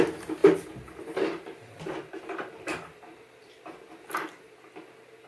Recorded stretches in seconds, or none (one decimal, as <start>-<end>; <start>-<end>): 0.0-0.4; 3.6-5.3